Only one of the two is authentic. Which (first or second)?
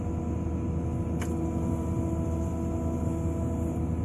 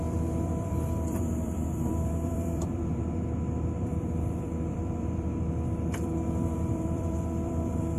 first